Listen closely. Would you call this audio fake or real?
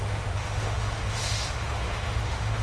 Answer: fake